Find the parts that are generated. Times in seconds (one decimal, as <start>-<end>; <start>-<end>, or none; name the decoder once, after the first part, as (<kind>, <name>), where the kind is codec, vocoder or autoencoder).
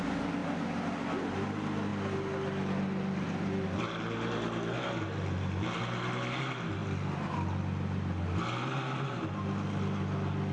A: none